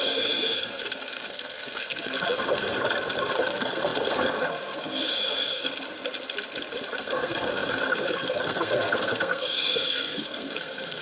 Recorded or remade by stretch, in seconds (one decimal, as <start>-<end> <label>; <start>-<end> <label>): 0.0-2.8 remade; 2.8-3.4 recorded; 3.4-5.7 remade; 5.7-7.0 recorded; 7.0-11.0 remade